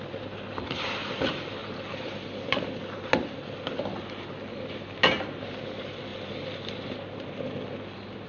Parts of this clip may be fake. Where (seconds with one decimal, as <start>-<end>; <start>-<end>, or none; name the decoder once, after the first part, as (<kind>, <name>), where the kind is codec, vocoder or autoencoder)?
none